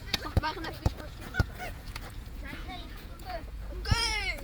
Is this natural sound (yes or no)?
no